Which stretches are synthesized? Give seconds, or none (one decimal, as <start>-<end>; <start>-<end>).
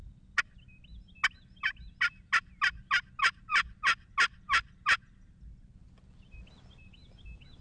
none